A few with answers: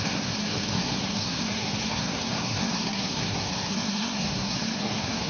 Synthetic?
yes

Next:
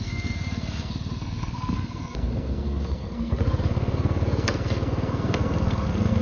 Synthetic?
yes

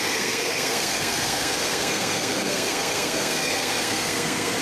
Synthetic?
yes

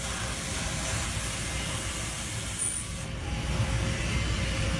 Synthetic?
no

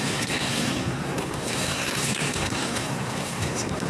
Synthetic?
yes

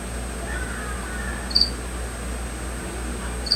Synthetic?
no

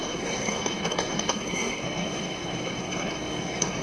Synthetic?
yes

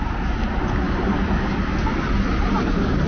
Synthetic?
no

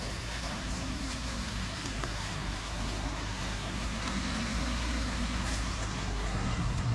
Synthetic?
yes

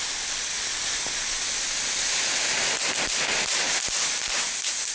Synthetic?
no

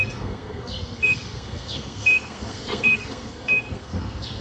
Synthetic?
yes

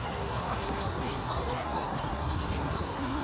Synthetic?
yes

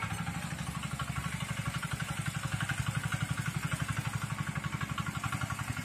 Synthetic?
no